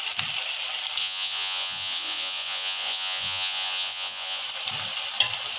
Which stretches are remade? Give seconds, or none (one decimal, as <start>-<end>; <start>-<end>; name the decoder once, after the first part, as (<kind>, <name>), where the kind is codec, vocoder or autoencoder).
1.0-4.4 (vocoder, Vocos)